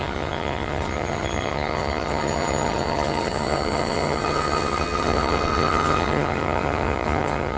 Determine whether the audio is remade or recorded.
remade